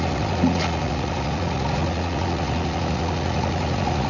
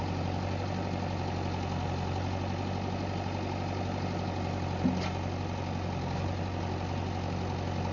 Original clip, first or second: second